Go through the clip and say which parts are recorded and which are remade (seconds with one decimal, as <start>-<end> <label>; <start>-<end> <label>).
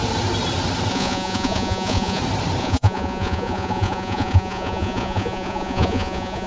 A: 0.0-0.9 recorded; 0.9-2.2 remade; 2.2-2.6 recorded; 2.6-6.5 remade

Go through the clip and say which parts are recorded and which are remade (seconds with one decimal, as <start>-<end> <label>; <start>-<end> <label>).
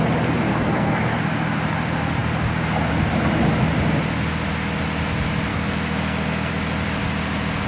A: 0.0-0.5 recorded; 0.5-1.2 remade; 1.2-5.5 recorded; 5.5-6.5 remade; 6.5-7.7 recorded